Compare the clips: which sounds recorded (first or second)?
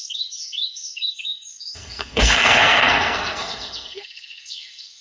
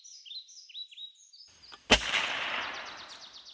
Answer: second